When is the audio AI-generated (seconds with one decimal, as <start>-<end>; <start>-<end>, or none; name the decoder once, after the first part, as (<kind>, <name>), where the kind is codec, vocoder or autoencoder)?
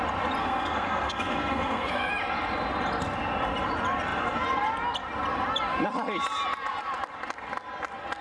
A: 0.4-2.1 (codec, SNAC)